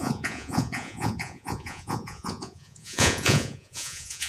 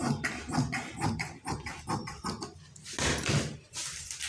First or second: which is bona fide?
second